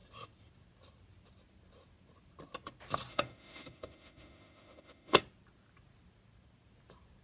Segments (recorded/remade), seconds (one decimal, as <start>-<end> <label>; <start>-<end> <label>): 0.0-3.1 recorded; 3.1-5.2 remade; 5.2-7.2 recorded